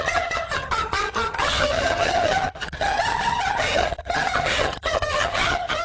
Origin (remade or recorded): remade